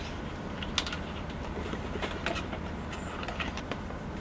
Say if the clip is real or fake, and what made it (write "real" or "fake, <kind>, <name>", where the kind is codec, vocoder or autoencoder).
real